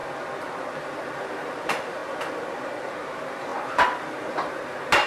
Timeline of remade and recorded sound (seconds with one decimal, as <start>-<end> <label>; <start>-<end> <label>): 0.0-0.8 recorded; 0.8-2.0 remade; 2.0-2.8 recorded; 2.8-5.1 remade